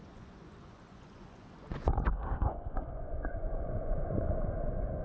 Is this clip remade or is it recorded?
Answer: remade